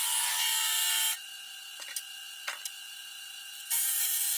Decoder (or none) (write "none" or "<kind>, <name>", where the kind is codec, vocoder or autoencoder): vocoder, BigVGAN v2